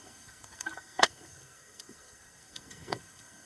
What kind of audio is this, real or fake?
fake